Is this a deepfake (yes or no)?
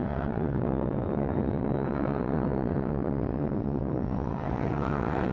yes